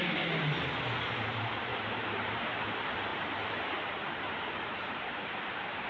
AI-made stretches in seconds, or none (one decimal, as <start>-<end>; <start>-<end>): 1.7-2.6; 3.1-5.4